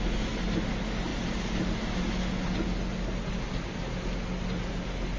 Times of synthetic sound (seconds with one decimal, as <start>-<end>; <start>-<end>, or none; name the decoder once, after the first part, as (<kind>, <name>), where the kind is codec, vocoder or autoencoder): none